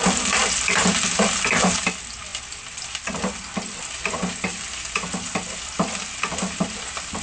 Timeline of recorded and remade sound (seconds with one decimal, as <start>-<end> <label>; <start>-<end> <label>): 0.0-2.3 recorded; 2.3-3.9 remade; 3.9-7.2 recorded